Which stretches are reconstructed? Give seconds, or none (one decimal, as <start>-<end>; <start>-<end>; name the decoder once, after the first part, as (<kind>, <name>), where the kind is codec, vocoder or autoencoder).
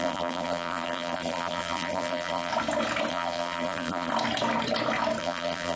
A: 0.0-2.5 (vocoder, BigVGAN v2); 3.1-4.1; 5.2-5.8